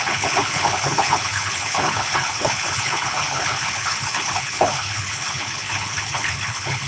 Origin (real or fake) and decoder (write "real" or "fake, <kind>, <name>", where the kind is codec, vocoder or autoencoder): fake, codec, HILCodec